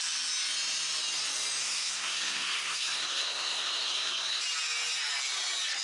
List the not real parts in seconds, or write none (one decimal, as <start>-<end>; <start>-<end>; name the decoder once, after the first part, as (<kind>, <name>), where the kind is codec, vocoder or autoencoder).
1.6-4.4 (codec, SNAC)